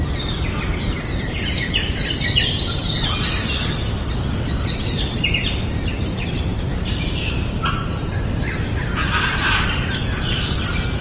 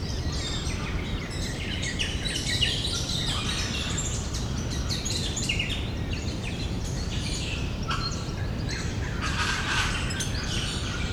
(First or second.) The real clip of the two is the first